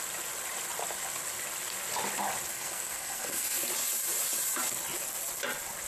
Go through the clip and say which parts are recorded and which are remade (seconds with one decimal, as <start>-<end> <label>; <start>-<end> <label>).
0.0-2.5 recorded; 2.5-3.6 remade; 3.6-5.9 recorded